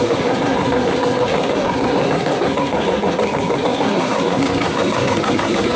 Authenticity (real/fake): fake